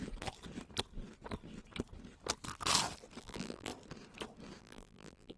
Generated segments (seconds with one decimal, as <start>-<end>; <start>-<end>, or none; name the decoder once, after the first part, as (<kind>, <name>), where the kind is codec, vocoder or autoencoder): 3.2-3.7 (vocoder, BigVGAN v2); 4.6-5.4